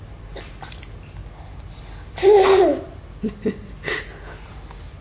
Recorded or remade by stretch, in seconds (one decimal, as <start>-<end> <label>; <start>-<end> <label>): 0.0-5.0 recorded